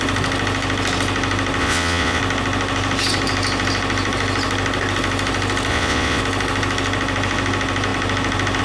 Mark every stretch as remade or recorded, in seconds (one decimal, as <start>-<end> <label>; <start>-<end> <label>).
0.0-1.6 recorded; 1.6-2.2 remade; 2.2-5.7 recorded; 5.7-6.2 remade; 6.2-8.6 recorded